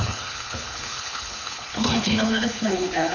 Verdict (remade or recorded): remade